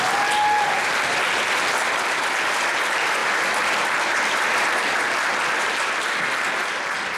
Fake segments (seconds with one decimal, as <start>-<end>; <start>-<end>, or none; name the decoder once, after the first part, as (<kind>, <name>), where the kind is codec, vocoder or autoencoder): none